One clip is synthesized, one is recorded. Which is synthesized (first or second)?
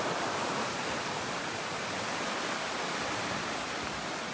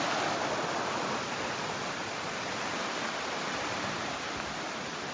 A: first